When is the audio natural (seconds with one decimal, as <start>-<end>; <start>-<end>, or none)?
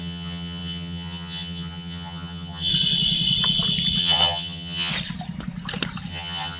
2.7-4.0; 4.9-6.1